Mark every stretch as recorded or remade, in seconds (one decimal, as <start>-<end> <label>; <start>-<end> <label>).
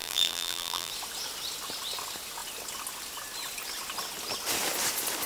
0.0-0.9 remade; 0.9-5.3 recorded